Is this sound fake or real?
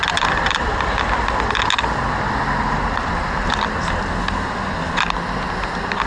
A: real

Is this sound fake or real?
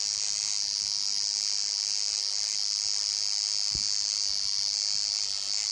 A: real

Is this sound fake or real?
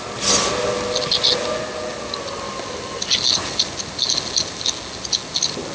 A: real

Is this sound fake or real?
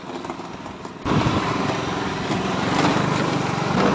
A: real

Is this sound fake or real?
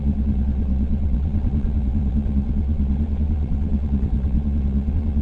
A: fake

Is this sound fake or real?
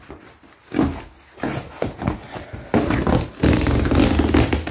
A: real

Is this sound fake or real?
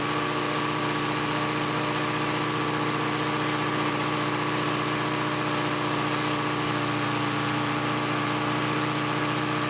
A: real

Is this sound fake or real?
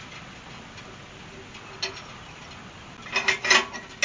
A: real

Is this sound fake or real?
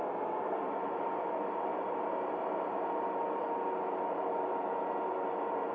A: real